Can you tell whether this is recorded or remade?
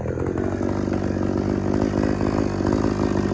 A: recorded